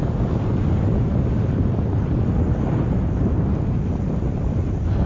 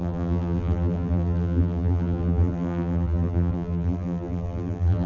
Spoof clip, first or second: second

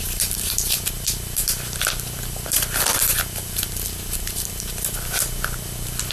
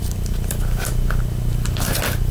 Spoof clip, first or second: first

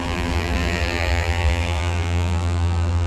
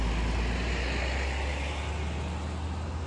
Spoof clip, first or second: first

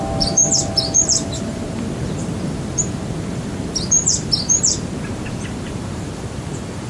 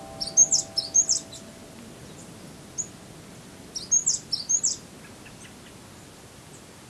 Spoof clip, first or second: first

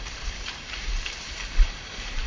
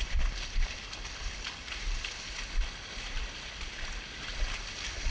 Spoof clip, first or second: first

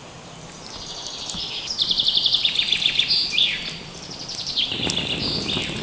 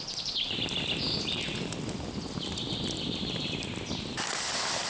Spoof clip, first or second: second